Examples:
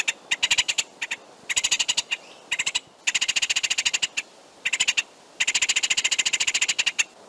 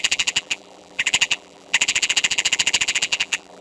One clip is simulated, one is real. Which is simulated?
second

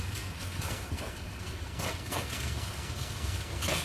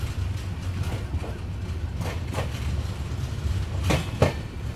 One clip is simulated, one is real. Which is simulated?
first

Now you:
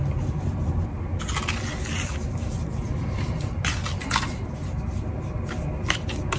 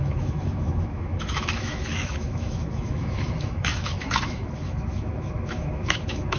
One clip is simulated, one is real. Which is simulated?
second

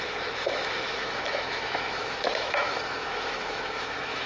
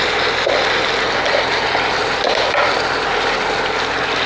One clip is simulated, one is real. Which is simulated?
first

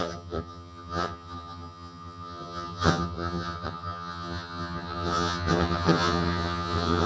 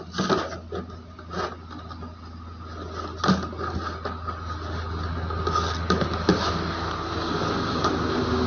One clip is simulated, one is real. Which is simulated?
first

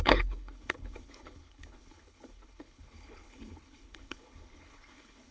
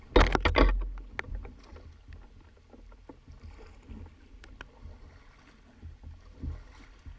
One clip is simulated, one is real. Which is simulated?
first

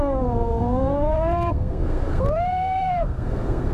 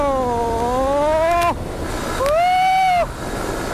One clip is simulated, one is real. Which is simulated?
first